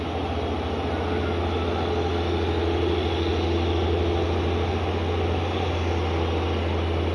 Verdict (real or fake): real